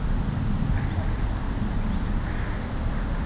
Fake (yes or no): no